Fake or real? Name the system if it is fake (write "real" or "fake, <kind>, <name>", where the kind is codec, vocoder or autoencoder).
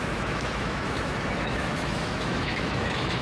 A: fake, autoencoder, DAC-VAE